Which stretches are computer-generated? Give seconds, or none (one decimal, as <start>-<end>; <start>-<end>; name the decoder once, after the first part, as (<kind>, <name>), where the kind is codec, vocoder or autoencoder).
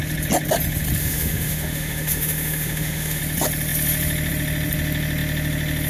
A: 1.0-3.2 (autoencoder, DAC-VAE)